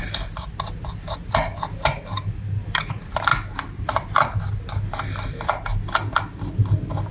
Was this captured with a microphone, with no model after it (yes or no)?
yes